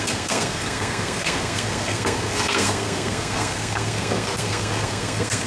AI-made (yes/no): yes